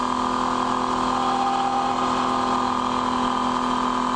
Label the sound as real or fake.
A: real